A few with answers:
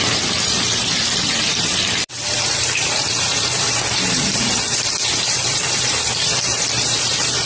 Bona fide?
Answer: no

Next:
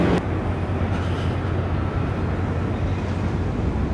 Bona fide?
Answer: yes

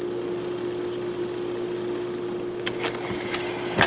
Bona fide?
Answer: yes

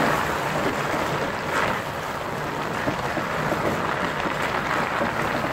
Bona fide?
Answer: yes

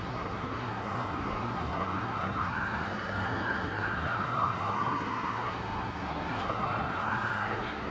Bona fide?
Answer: no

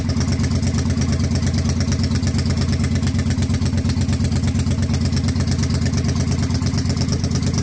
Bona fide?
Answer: yes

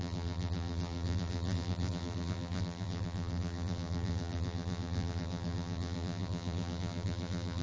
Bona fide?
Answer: no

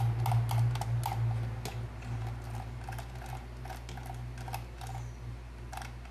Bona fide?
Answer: yes